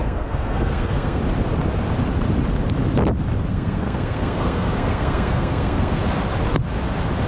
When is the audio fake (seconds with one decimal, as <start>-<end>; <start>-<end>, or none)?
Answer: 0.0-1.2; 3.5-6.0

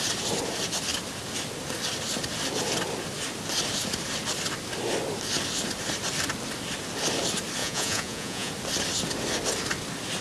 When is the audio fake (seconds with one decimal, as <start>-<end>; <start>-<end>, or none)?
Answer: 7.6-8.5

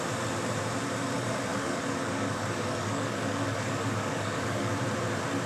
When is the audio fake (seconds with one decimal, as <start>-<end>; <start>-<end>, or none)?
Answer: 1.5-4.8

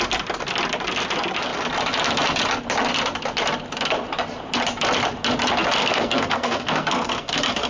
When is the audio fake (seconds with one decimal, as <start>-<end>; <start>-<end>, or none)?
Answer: 5.8-7.7